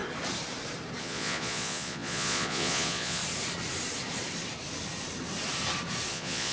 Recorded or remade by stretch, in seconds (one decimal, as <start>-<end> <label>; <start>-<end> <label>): 0.0-1.0 recorded; 1.0-3.2 remade; 3.2-6.1 recorded; 6.1-6.5 remade

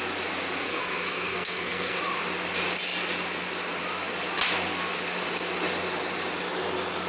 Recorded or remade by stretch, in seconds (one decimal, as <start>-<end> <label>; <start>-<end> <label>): 0.0-0.6 recorded; 0.6-2.0 remade; 2.0-7.1 recorded

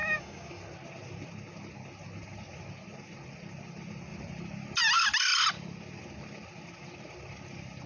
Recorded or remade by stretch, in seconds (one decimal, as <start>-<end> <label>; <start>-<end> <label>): 0.0-0.6 remade; 0.6-7.9 recorded

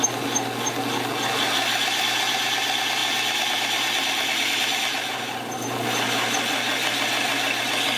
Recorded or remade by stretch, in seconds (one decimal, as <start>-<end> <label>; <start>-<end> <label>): 0.0-8.0 recorded

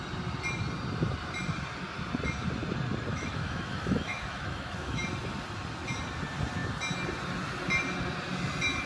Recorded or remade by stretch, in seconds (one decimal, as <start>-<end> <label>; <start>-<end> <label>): 0.0-3.1 recorded; 3.1-5.0 remade; 5.0-8.9 recorded

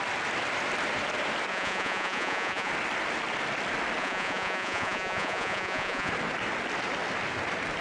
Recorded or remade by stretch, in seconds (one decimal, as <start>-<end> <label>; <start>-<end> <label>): 0.0-1.5 recorded; 1.5-2.7 remade; 2.7-4.0 recorded; 4.0-6.1 remade; 6.1-7.8 recorded

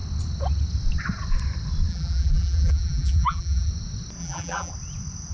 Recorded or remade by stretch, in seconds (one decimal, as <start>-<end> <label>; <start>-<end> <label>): 0.0-1.9 recorded; 1.9-3.7 remade; 3.7-4.2 recorded; 4.2-4.7 remade; 4.7-5.3 recorded

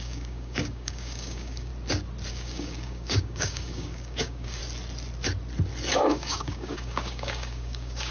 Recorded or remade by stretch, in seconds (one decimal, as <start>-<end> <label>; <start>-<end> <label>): 0.0-1.7 remade; 1.7-2.3 recorded; 2.3-4.6 remade; 4.6-5.9 recorded; 5.9-8.1 remade